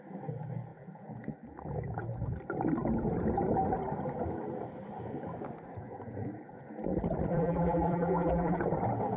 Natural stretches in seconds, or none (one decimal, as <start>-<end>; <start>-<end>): 0.0-7.3; 8.6-9.2